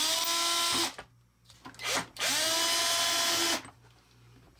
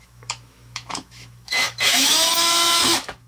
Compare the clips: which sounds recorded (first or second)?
first